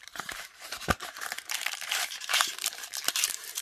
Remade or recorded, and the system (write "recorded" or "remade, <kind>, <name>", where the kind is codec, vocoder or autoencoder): remade, vocoder, BigVGAN v2